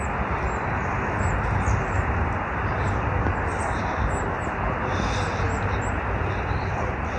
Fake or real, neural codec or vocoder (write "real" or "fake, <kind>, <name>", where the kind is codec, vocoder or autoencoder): real